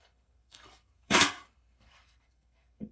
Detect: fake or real fake